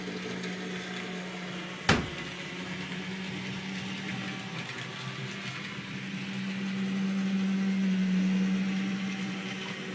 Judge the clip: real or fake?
real